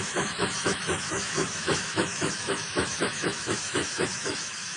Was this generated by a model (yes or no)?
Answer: yes